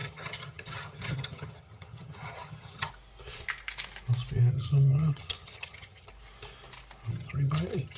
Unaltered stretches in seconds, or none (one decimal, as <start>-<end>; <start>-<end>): 2.9-4.5; 6.1-7.1